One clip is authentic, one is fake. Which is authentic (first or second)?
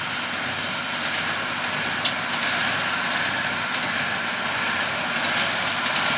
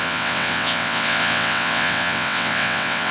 first